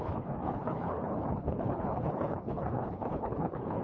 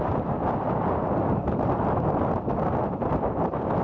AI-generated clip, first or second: first